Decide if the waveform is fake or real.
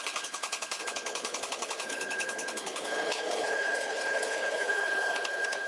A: fake